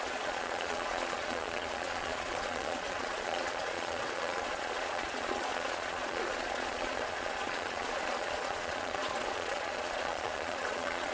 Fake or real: fake